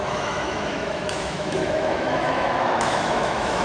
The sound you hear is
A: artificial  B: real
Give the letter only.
A